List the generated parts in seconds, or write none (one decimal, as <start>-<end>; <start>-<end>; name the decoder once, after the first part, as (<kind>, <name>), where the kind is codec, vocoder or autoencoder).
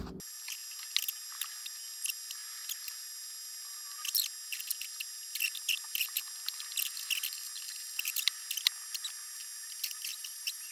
10.1-10.7 (vocoder, BigVGAN v2)